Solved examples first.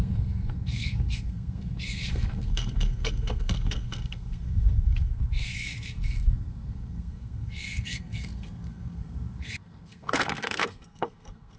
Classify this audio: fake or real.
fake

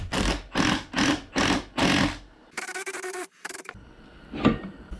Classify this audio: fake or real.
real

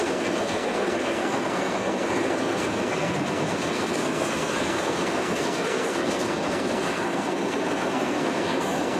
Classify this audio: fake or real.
fake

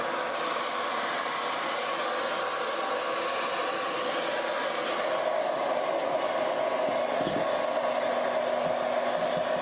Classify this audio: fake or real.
real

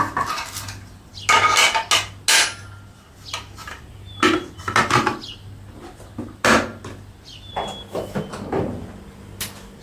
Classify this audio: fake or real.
real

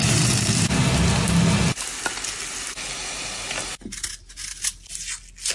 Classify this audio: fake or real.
real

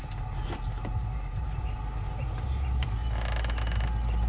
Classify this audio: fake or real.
real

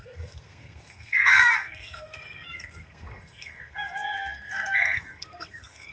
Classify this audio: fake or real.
fake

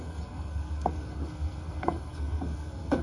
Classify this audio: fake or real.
fake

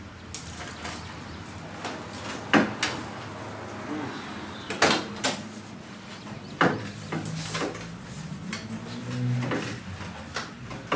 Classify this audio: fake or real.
real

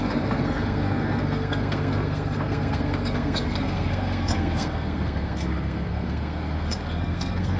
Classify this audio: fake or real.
fake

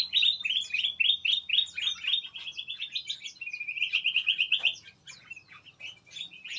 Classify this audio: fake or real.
real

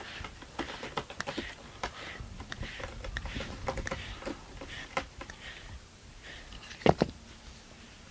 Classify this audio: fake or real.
real